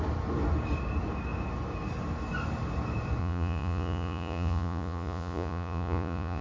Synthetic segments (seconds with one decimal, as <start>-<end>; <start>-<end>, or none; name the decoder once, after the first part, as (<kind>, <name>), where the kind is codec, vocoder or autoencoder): 3.2-6.4 (vocoder, Vocos)